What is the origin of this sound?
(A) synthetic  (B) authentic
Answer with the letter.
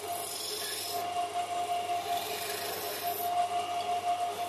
B